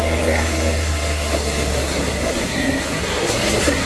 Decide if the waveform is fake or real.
fake